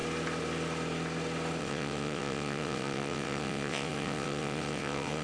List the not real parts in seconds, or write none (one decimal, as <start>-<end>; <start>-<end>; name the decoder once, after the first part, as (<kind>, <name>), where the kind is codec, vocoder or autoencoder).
1.6-5.2 (vocoder, WaveNeXt)